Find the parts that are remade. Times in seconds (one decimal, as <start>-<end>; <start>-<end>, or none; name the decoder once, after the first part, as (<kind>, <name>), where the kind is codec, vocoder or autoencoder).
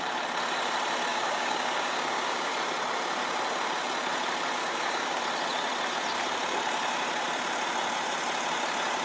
1.1-2.5 (codec, DAC); 4.6-5.2